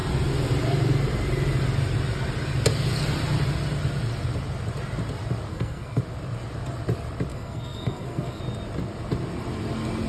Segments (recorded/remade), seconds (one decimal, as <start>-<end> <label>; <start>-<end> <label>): 0.0-5.5 recorded; 5.5-6.0 remade; 6.0-7.3 recorded; 7.3-8.4 remade; 8.4-10.1 recorded